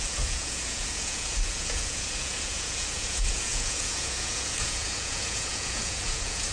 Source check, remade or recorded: remade